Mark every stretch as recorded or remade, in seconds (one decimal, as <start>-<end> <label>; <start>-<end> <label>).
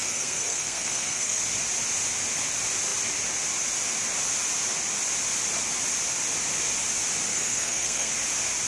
0.0-1.4 remade; 1.4-7.3 recorded; 7.3-8.1 remade; 8.1-8.7 recorded